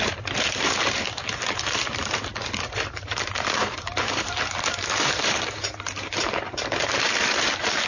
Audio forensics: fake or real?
fake